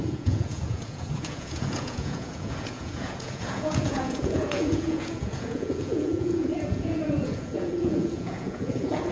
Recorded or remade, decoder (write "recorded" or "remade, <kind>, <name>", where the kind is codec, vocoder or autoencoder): remade, vocoder, Vocos